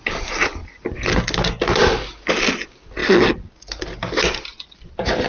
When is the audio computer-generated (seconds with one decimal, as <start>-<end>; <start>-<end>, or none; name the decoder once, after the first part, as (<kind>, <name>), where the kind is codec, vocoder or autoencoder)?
4.5-5.3 (vocoder, BigVGAN v2)